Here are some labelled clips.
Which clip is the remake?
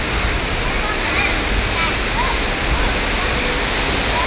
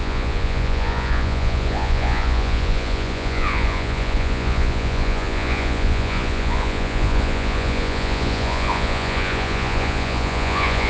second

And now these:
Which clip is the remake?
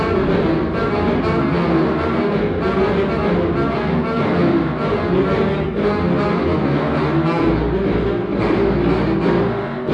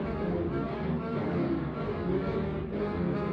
second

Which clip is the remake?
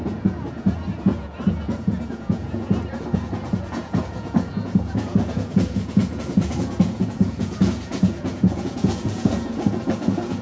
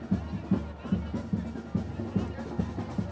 first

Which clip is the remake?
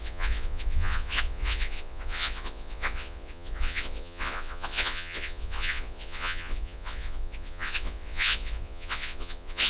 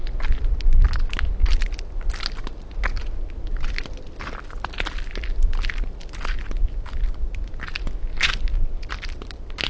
first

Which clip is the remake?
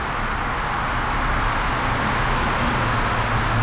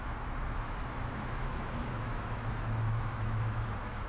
second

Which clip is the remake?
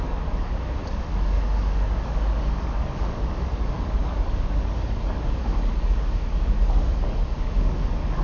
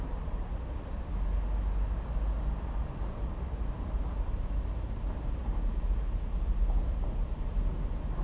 first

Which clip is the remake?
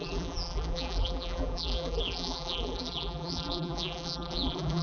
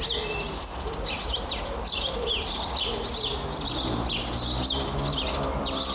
first